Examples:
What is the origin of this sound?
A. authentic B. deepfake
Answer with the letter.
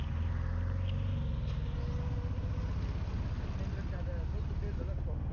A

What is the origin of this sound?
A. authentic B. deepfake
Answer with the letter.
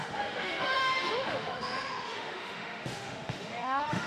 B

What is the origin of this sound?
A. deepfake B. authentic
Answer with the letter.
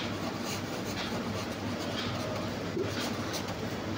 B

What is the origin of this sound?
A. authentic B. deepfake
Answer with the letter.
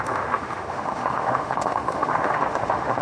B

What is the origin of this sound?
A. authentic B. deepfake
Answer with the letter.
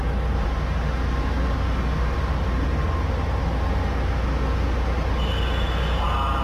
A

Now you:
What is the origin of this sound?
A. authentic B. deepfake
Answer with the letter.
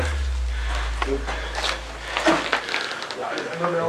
A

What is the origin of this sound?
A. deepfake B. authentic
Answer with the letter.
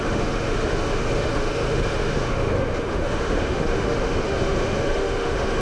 A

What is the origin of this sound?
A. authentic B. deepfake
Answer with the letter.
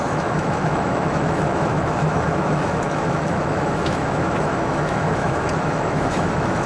B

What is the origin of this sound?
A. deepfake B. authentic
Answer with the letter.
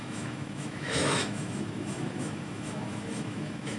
A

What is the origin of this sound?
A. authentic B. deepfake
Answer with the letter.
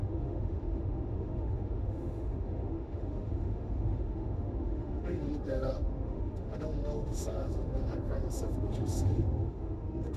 B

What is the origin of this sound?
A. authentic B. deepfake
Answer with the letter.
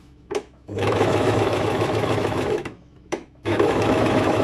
B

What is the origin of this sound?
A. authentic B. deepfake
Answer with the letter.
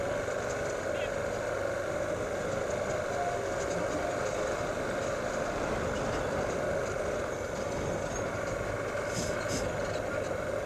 A